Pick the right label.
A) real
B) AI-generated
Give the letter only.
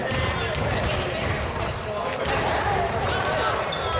A